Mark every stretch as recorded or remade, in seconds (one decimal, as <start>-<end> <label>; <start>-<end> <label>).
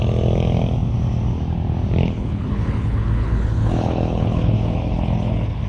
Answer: 0.0-2.0 recorded; 2.0-5.7 remade